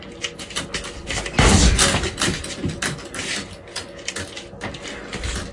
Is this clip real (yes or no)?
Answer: yes